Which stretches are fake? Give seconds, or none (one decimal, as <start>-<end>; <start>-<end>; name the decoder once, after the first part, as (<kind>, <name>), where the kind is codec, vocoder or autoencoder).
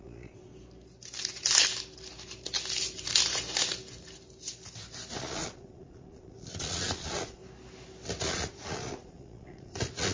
0.0-0.5 (vocoder, Vocos); 5.1-7.4; 8.2-10.1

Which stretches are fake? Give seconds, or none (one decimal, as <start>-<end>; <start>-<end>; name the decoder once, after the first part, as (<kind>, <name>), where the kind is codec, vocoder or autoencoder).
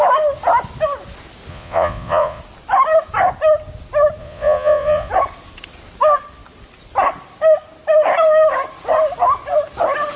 1.5-2.4 (vocoder, Vocos); 4.2-5.1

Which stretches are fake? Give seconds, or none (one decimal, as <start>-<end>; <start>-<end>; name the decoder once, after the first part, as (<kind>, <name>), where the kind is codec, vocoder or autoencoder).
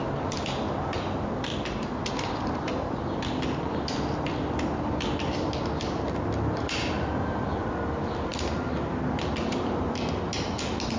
none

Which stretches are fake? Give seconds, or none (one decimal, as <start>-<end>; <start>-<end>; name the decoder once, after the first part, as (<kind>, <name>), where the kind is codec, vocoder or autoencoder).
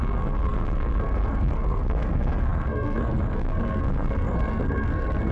0.0-5.3 (codec, SNAC)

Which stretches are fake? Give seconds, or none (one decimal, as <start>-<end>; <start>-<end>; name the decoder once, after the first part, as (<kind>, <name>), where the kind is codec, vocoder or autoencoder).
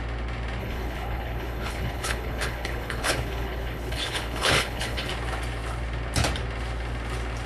0.6-5.1 (codec, HILCodec)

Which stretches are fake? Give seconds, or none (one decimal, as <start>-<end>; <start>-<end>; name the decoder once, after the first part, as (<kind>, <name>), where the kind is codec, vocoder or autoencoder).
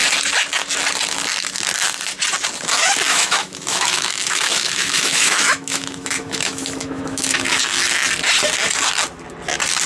3.1-7.6 (autoencoder, DAC-VAE)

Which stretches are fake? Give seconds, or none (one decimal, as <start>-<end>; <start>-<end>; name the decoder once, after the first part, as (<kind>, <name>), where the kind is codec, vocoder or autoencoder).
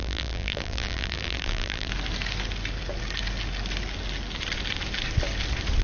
0.0-1.9 (vocoder, BigVGAN v2)